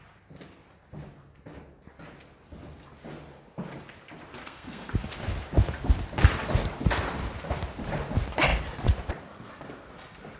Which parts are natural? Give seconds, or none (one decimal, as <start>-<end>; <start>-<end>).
0.0-4.4; 4.9-10.4